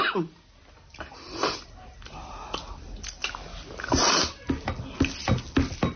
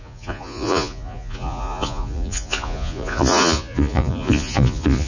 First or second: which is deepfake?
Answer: second